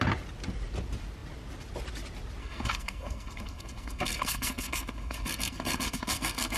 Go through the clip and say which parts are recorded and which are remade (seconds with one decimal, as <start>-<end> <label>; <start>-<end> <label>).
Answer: 0.0-2.4 recorded; 2.4-6.6 remade